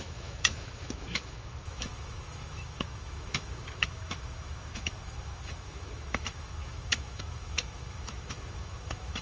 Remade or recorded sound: remade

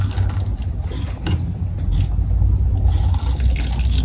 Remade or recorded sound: recorded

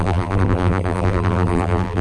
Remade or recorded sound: remade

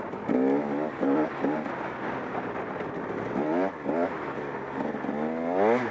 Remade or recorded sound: recorded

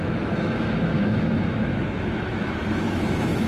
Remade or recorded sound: remade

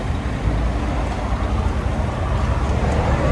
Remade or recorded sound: recorded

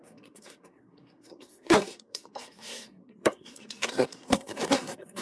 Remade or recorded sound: remade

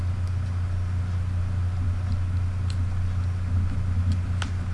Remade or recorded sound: recorded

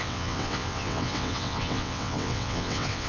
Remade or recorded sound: remade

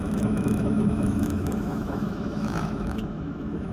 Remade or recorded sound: remade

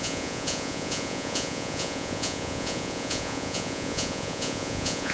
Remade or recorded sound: remade